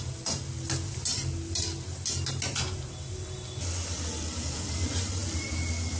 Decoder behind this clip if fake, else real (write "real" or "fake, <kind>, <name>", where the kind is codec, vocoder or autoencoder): real